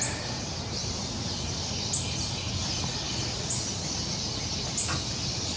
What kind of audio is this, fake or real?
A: real